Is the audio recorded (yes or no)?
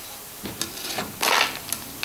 yes